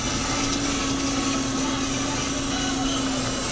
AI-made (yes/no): no